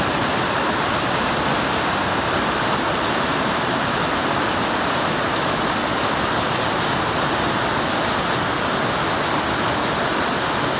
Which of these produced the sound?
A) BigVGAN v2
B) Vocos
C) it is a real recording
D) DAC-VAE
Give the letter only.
C